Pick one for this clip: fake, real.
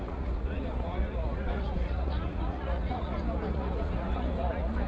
fake